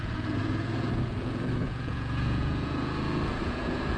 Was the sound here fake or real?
fake